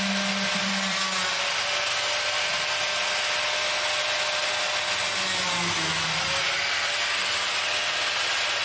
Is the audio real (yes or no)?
yes